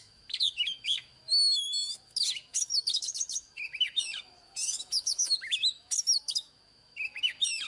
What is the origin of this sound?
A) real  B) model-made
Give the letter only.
B